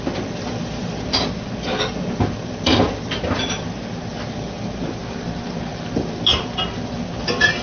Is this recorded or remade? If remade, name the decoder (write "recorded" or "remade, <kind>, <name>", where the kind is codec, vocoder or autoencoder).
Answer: recorded